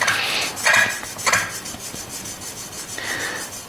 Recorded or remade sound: recorded